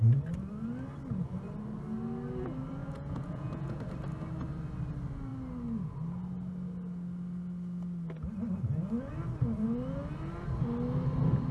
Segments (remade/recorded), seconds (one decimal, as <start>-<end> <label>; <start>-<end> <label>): 0.0-2.8 recorded; 2.8-3.8 remade; 3.8-11.5 recorded